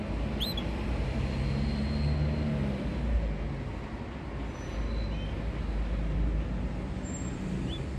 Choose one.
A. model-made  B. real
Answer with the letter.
B